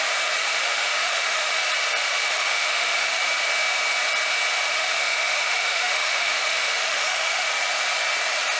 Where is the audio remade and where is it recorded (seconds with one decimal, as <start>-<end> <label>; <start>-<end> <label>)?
0.0-0.4 recorded; 0.4-1.6 remade; 1.6-2.3 recorded; 2.3-3.2 remade; 3.2-4.7 recorded; 4.7-7.5 remade; 7.5-8.6 recorded